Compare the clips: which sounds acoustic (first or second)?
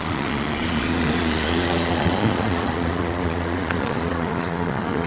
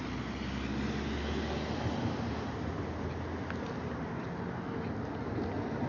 second